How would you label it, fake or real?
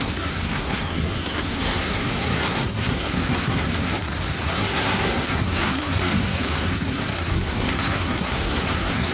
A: fake